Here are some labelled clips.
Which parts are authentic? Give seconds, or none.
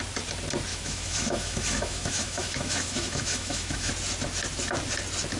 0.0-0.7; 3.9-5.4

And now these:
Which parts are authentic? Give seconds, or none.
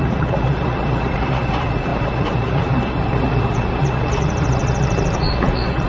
none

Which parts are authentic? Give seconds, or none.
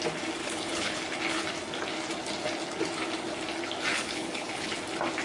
0.0-0.4; 1.0-3.9; 4.8-5.2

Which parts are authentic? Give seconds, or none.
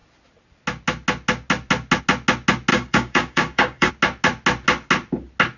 0.0-2.7; 3.9-5.6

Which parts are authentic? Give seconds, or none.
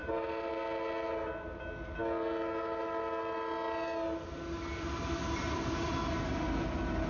0.5-7.1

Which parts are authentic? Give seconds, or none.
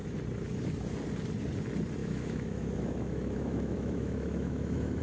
0.0-2.0